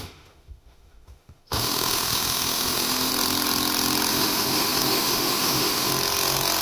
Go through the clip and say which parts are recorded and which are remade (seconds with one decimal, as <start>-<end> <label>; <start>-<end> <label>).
0.0-3.1 remade; 3.1-4.1 recorded; 4.1-5.9 remade; 5.9-6.6 recorded